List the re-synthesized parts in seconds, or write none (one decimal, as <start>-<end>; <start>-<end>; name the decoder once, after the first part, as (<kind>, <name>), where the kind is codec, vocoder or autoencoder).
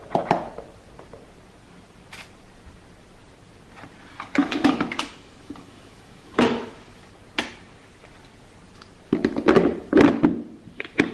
4.4-7.1 (autoencoder, DAC-VAE)